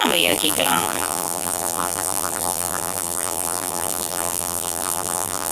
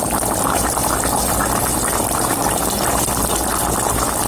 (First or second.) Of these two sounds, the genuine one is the second